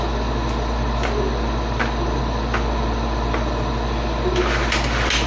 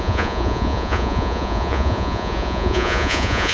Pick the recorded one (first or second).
first